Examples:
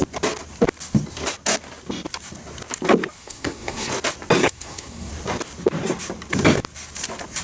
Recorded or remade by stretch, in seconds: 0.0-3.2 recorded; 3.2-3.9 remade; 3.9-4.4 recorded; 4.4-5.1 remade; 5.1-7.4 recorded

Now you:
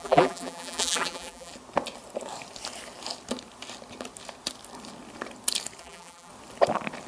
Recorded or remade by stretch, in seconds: 0.0-1.5 remade; 1.5-5.8 recorded; 5.8-6.3 remade; 6.3-7.1 recorded

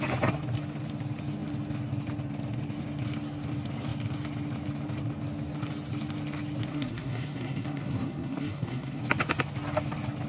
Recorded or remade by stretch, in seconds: 0.0-6.7 recorded; 6.7-9.0 remade; 9.0-10.3 recorded

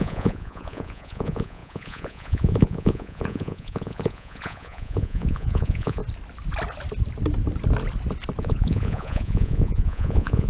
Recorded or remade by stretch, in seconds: 0.0-6.0 remade; 6.0-8.4 recorded; 8.4-10.5 remade

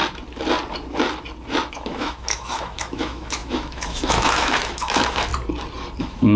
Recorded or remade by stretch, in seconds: 0.0-1.7 recorded; 1.7-5.3 remade; 5.3-6.0 recorded; 6.0-6.4 remade